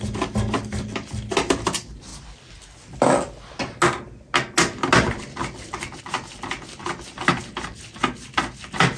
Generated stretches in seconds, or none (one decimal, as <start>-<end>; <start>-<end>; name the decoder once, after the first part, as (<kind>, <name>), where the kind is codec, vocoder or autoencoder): none